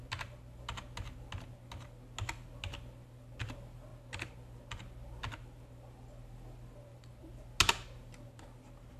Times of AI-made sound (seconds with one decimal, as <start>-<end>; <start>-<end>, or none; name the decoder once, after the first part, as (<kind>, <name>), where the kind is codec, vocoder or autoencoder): none